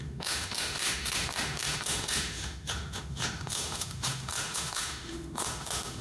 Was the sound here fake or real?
fake